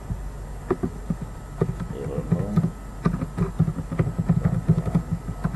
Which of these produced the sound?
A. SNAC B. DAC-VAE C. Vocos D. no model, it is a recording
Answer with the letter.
D